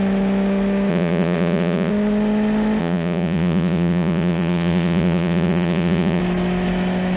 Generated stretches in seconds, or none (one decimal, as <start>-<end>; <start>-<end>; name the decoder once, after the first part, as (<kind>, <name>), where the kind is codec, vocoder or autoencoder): 0.9-1.9 (vocoder, Vocos); 2.8-6.2